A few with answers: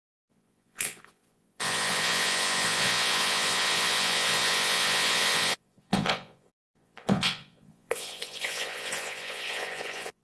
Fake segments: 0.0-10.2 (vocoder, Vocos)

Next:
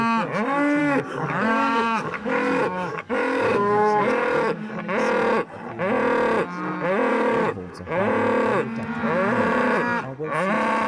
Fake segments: 0.8-4.7 (codec, DAC); 7.1-8.0

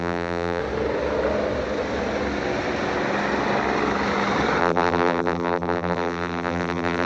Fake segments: 0.0-0.6 (vocoder, BigVGAN v2); 4.6-7.1

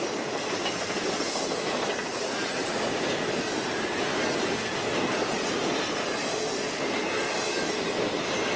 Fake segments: 2.1-2.8 (vocoder, Vocos)